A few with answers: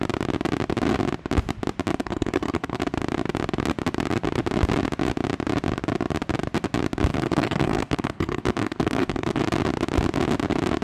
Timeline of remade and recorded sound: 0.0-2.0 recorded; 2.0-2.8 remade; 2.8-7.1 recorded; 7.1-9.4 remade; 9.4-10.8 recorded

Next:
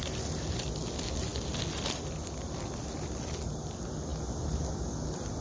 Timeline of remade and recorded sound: 0.0-5.4 recorded

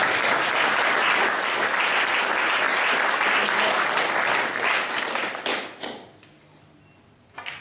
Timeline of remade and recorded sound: 0.0-7.6 recorded